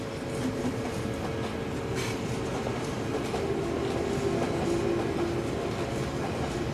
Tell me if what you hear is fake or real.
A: real